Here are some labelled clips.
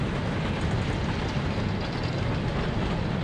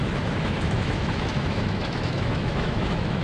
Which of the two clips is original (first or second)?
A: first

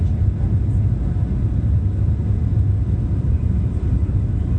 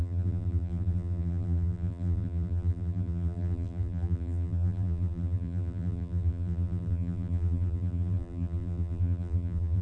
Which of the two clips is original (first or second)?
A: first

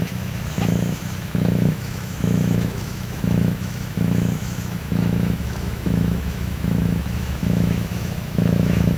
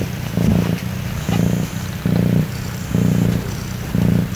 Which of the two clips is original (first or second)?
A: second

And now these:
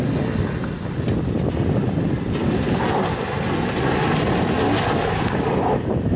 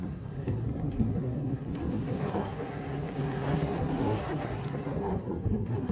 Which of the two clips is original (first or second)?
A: first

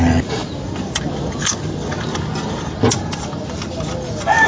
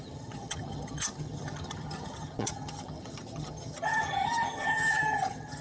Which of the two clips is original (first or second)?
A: first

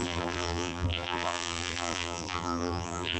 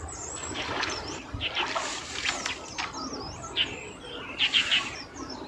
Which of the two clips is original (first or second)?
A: second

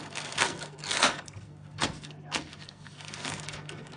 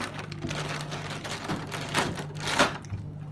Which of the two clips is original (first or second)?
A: second